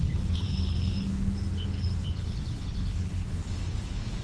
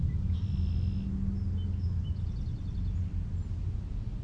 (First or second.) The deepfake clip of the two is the first